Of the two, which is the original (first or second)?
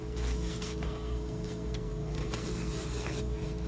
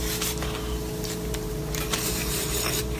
second